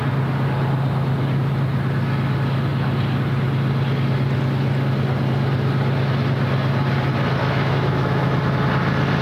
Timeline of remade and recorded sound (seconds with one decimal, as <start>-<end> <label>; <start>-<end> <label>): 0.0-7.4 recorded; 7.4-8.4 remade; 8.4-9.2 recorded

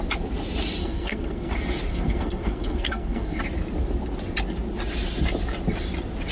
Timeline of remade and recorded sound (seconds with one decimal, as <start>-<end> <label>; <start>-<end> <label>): 0.0-0.8 recorded; 0.8-1.5 remade; 1.5-1.9 recorded; 1.9-3.4 remade; 3.4-6.3 recorded

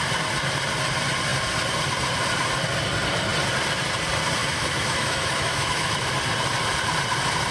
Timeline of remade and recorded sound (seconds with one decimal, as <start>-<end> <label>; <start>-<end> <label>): 0.0-4.4 recorded; 4.4-6.1 remade; 6.1-7.5 recorded

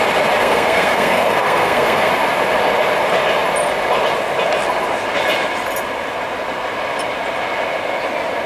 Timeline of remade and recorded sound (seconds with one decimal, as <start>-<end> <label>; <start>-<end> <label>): 0.0-0.4 recorded; 0.4-2.1 remade; 2.1-8.5 recorded

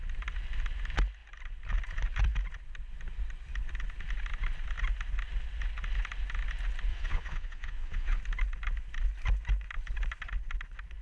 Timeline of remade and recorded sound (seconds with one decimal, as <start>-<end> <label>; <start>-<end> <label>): 0.0-6.9 recorded; 6.9-8.2 remade; 8.2-11.0 recorded

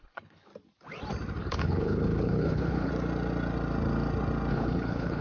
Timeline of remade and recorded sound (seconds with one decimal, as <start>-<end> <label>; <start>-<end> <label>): 0.0-0.5 remade; 0.5-1.4 recorded; 1.4-2.9 remade; 2.9-4.5 recorded; 4.5-5.2 remade

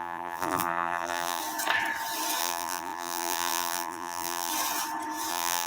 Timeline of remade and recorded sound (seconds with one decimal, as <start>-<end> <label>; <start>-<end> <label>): 0.0-1.4 remade; 1.4-2.4 recorded; 2.4-4.5 remade; 4.5-5.3 recorded; 5.3-5.7 remade

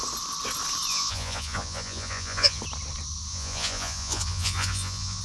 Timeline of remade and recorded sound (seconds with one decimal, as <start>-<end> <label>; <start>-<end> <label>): 0.0-0.9 recorded; 0.9-2.6 remade; 2.6-3.3 recorded; 3.3-5.2 remade